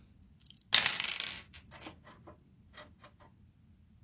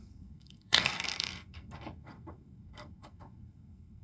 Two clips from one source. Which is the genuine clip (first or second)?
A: first